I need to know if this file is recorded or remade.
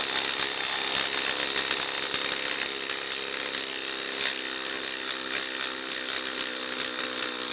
recorded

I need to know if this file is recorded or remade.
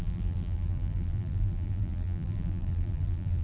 remade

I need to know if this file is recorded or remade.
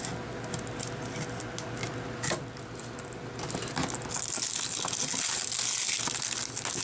recorded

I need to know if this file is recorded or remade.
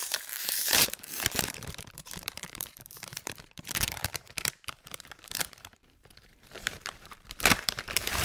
remade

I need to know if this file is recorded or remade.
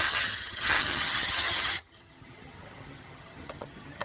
remade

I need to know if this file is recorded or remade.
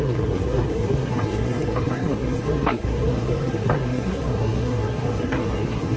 remade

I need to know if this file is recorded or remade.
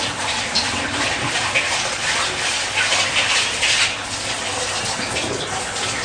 recorded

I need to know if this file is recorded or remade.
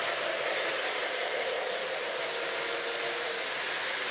recorded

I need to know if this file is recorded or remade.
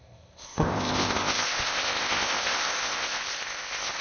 remade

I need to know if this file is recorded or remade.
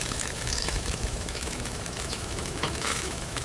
remade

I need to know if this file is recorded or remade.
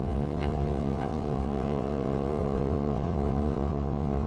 remade